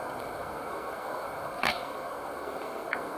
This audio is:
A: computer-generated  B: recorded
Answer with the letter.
A